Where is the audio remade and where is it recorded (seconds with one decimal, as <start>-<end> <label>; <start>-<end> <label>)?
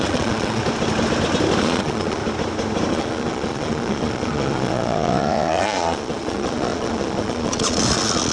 0.0-0.6 remade; 0.6-1.6 recorded; 1.6-2.2 remade; 2.2-2.9 recorded; 2.9-8.3 remade